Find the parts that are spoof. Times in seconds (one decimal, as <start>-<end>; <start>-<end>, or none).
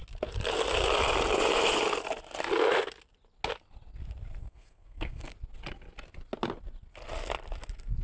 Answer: 4.4-5.3